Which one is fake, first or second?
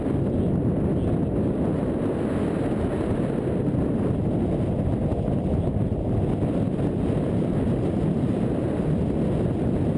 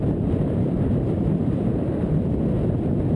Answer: second